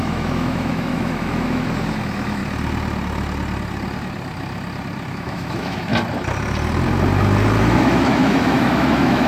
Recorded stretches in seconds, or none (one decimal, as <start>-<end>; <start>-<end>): 2.4-5.1; 5.9-7.6